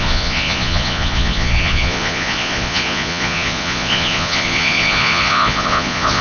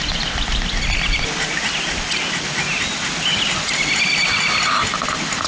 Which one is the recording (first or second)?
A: second